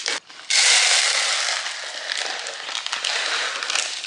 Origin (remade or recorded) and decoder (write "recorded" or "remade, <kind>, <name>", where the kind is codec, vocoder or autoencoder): recorded